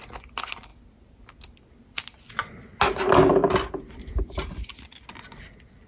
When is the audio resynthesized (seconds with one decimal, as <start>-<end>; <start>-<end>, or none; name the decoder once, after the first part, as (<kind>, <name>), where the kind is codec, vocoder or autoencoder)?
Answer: none